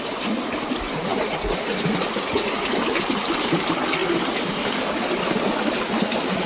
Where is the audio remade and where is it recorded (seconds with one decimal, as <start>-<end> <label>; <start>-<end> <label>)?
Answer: 0.0-6.5 recorded